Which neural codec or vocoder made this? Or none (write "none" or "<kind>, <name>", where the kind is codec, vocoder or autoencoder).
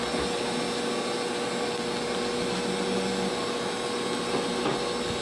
none